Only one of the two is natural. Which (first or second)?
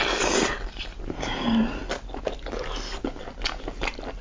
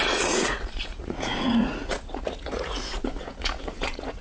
first